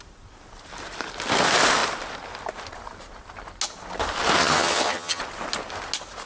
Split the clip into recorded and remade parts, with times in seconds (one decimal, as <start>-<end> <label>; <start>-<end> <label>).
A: 0.0-4.4 recorded; 4.4-5.2 remade; 5.2-6.3 recorded